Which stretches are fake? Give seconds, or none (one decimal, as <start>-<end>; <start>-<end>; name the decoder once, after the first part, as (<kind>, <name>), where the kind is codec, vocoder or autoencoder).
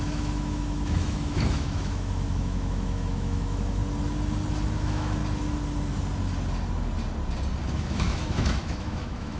0.0-3.8 (autoencoder, DAC-VAE); 4.8-5.2; 7.7-9.4